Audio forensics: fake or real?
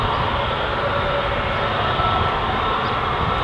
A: real